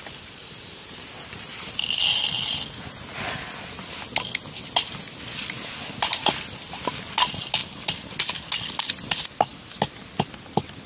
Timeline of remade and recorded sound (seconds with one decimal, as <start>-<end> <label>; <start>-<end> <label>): 0.0-10.9 recorded

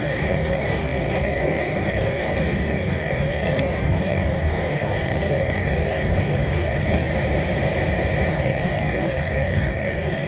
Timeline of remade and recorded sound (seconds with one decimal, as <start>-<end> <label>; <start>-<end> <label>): 0.0-7.1 remade; 7.1-8.3 recorded; 8.3-10.3 remade

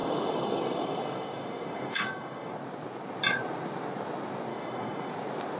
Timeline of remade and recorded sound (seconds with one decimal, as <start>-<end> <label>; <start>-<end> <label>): 0.0-2.5 remade; 2.5-4.5 recorded; 4.5-5.1 remade; 5.1-5.6 recorded

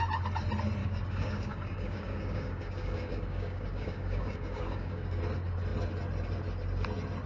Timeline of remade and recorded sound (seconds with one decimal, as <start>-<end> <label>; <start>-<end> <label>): 0.0-0.8 recorded; 0.8-5.2 remade; 5.2-7.3 recorded

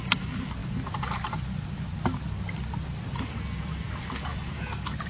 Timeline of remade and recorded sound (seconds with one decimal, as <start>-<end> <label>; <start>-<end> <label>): 0.0-5.1 recorded

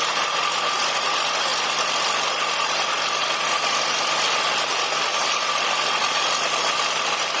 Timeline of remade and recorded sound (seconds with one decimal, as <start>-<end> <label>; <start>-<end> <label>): 0.0-7.4 recorded

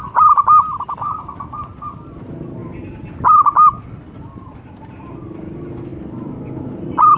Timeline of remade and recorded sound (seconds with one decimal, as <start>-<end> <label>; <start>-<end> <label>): 0.0-7.2 recorded